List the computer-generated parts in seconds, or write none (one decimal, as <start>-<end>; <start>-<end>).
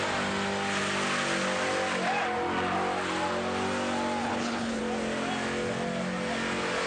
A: 4.2-4.8